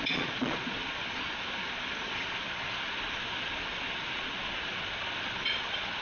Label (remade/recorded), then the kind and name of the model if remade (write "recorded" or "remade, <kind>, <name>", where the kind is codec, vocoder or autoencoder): remade, vocoder, Vocos